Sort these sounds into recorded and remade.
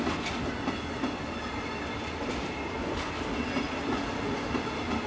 recorded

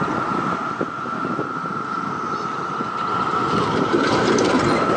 recorded